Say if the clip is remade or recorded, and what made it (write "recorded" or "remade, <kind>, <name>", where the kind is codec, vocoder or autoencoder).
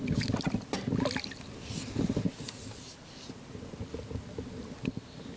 recorded